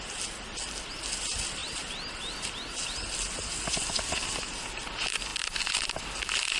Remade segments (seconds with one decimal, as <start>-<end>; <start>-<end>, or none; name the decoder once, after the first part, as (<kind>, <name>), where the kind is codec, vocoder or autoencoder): none

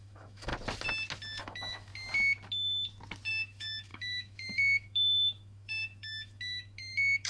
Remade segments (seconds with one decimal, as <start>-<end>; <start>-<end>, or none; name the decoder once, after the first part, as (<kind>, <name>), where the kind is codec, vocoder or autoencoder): 0.0-0.5 (autoencoder, DAC-VAE); 1.4-1.9; 3.3-7.3

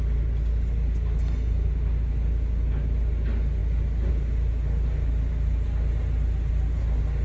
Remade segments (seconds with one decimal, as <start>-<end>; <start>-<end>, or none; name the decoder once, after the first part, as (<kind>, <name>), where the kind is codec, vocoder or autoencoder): none

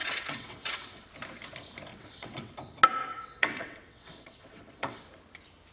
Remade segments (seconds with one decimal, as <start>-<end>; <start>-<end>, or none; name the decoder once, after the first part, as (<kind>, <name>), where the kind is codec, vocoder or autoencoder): 0.0-1.1 (vocoder, WaveNeXt); 1.9-2.5; 3.1-5.0